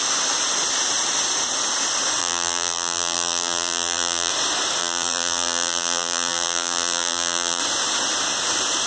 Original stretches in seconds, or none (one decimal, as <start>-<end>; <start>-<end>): 0.0-2.2; 4.3-4.8; 7.6-8.9